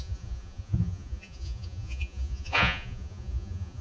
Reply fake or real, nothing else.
fake